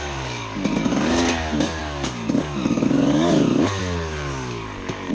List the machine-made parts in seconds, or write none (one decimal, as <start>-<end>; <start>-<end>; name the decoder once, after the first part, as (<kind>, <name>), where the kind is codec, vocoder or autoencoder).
0.0-5.1 (codec, DAC)